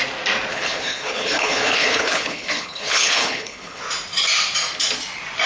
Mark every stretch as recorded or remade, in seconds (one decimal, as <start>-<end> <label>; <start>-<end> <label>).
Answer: 0.0-0.5 recorded; 0.5-3.8 remade; 3.8-5.5 recorded